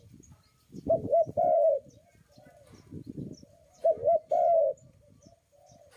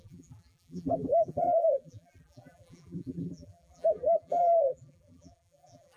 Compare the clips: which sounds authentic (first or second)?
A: first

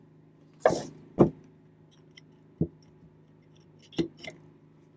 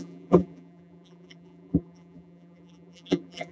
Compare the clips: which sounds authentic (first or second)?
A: first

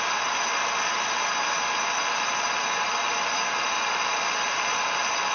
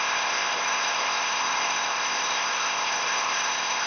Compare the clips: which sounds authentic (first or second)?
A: first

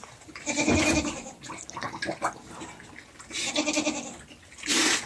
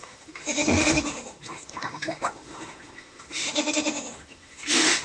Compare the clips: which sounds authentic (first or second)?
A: first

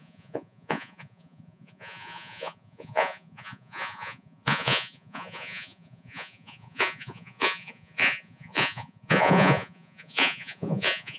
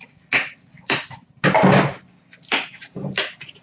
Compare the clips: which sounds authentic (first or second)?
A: second